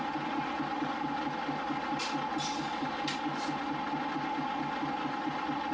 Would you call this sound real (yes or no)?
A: yes